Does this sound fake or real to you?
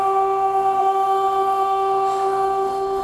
fake